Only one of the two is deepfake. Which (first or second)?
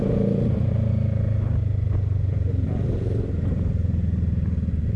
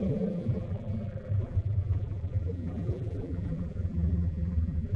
second